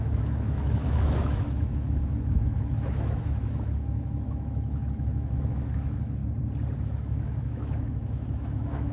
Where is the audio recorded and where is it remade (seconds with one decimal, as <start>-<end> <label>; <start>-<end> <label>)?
0.0-6.2 remade; 6.2-6.8 recorded; 6.8-8.9 remade